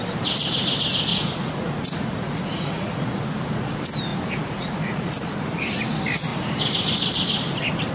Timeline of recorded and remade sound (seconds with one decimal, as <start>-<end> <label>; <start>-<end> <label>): 0.0-1.1 recorded; 1.1-3.2 remade; 3.2-4.1 recorded; 4.1-5.2 remade; 5.2-7.9 recorded